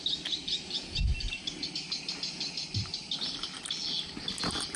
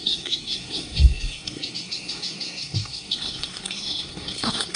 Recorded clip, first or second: first